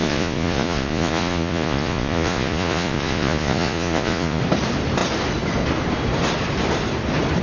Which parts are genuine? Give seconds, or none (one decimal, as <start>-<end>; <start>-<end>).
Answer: 4.4-7.4